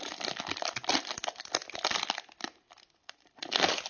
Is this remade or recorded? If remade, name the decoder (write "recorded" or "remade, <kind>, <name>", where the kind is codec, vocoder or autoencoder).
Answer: recorded